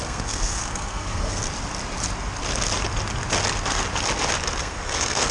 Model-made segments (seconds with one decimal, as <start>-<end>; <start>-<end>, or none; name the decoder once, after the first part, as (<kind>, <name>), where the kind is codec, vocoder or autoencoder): 0.0-1.4 (codec, SNAC); 4.6-5.3